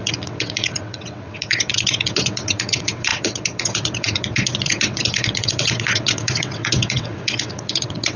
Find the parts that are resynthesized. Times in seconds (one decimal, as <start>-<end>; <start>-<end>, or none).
0.0-8.2